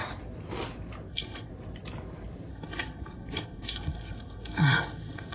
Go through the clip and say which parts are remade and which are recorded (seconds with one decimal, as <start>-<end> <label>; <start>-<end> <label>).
0.0-1.1 recorded; 1.1-1.5 remade; 1.5-2.5 recorded; 2.5-5.3 remade